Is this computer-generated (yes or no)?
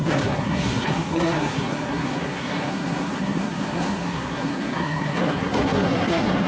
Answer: yes